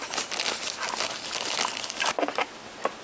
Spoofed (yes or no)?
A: no